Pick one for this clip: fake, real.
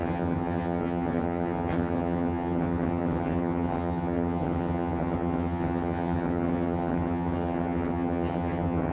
fake